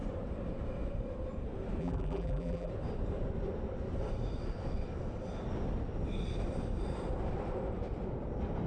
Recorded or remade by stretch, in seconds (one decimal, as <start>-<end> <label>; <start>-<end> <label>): 0.0-1.8 recorded; 1.8-2.7 remade; 2.7-8.7 recorded